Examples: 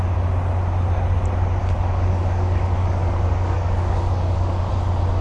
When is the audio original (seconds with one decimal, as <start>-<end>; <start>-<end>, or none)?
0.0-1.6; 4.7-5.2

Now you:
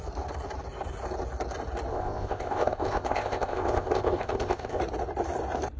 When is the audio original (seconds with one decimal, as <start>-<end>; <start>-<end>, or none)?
0.0-1.9; 4.8-5.8

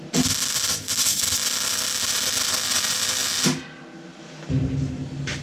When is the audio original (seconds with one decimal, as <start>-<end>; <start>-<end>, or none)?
0.0-5.4

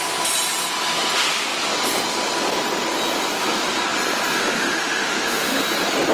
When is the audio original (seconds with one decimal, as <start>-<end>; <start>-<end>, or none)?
0.0-4.4; 5.6-6.1

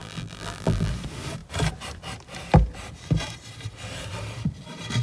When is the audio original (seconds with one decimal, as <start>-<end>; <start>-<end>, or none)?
0.9-5.0

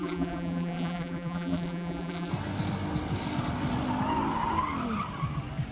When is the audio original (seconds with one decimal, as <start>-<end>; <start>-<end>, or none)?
2.3-5.7